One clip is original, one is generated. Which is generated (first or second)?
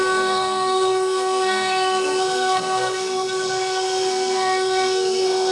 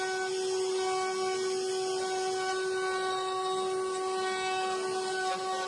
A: first